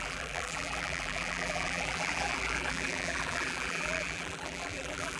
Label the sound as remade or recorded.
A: remade